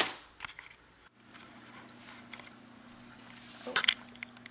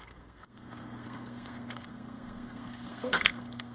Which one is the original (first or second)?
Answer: first